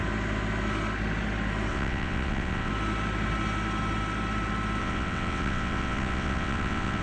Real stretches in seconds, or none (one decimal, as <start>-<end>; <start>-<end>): 0.0-1.7; 2.7-4.8

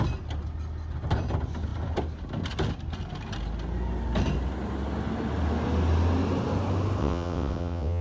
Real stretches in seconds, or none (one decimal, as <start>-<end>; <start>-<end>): 0.0-7.0

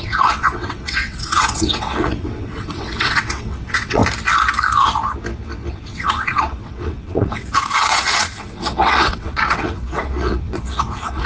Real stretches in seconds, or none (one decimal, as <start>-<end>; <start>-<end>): 4.0-5.7